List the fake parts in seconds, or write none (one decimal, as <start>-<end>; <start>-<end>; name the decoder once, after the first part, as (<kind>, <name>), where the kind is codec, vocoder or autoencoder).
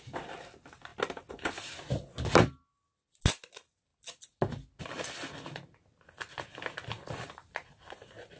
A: none